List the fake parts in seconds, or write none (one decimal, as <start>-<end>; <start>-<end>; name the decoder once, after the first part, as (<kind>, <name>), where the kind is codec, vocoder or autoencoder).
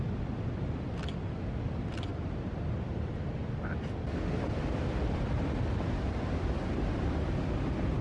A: none